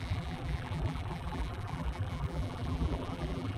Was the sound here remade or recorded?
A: remade